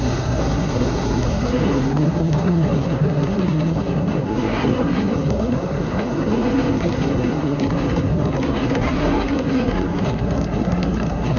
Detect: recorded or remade remade